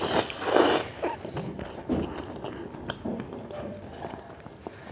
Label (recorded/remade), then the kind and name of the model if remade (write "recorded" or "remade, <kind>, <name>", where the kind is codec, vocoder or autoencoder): recorded